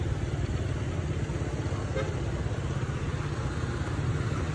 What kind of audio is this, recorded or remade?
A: recorded